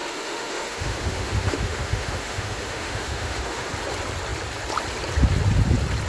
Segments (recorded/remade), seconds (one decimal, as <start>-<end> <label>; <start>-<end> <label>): 0.0-3.7 remade; 3.7-6.1 recorded